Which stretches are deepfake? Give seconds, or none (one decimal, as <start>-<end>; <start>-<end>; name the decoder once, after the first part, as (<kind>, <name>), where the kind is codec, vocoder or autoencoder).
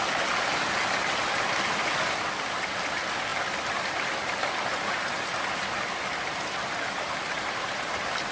none